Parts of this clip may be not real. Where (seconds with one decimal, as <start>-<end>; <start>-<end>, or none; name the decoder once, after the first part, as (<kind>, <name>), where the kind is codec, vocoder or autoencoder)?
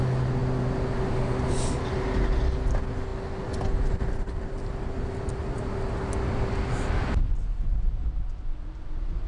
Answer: none